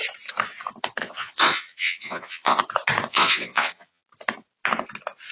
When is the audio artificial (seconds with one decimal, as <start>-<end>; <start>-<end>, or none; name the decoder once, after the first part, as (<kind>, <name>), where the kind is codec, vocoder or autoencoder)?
1.0-2.6 (vocoder, Vocos); 3.1-4.0